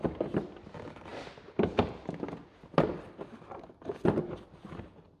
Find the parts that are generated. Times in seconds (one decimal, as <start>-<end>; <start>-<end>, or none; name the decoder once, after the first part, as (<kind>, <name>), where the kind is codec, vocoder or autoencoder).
none